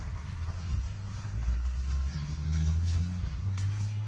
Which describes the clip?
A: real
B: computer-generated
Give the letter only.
B